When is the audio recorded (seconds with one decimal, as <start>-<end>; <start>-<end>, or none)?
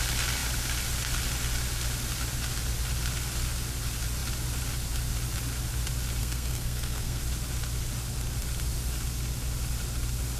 0.0-6.2; 7.2-10.4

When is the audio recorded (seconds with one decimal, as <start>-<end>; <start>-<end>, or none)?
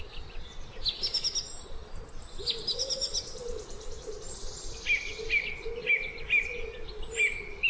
0.0-7.7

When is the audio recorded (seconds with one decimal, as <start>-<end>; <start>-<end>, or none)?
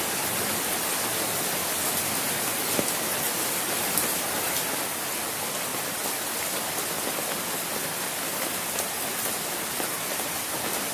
0.0-10.9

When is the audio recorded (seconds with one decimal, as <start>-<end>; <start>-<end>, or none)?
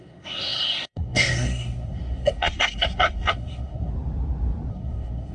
3.9-4.7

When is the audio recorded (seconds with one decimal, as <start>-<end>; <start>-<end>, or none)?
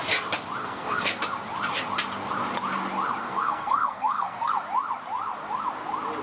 0.0-0.6; 1.2-3.2; 4.5-6.2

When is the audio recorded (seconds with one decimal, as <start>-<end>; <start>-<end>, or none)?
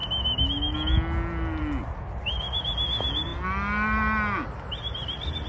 0.0-5.5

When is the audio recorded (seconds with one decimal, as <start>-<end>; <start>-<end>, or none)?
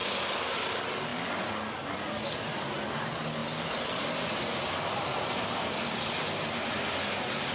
0.0-7.5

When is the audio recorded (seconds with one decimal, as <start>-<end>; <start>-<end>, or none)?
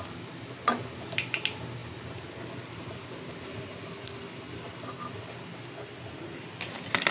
0.0-7.1